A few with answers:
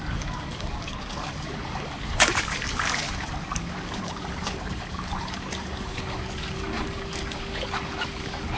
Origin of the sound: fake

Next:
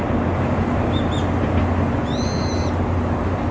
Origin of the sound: real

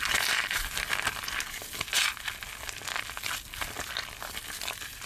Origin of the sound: real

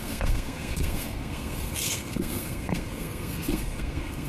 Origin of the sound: fake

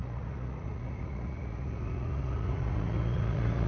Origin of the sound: fake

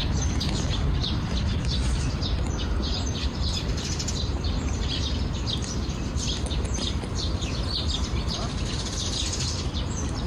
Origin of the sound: fake